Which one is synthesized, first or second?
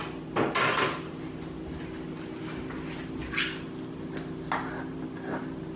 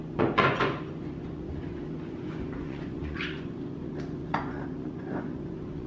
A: second